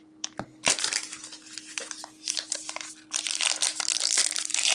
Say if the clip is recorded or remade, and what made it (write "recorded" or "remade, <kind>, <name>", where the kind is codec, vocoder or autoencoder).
remade, vocoder, BigVGAN v2